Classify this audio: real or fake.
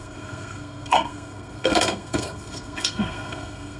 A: fake